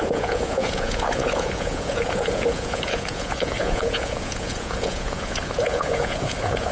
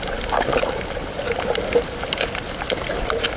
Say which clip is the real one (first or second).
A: second